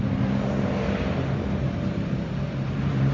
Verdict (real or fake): fake